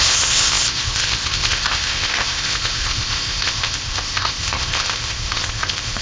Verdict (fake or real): fake